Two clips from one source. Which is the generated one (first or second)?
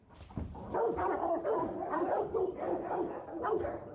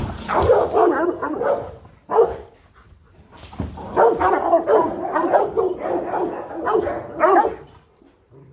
first